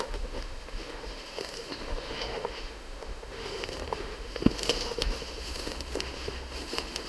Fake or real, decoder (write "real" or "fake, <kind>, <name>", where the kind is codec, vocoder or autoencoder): fake, autoencoder, DAC-VAE